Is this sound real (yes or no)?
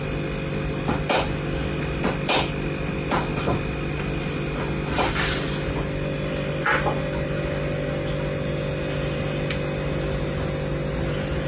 yes